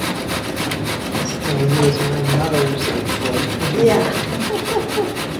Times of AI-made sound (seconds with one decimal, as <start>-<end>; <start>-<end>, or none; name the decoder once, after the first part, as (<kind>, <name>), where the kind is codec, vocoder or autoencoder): none